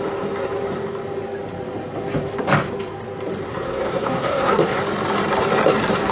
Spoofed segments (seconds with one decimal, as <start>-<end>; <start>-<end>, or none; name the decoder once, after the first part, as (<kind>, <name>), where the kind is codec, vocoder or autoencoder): 3.5-4.8 (codec, SNAC)